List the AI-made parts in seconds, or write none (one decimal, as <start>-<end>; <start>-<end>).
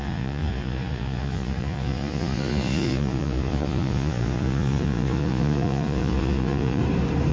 0.0-6.8